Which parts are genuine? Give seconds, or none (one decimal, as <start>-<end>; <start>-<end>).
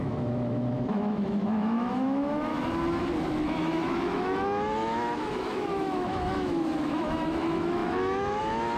2.5-3.3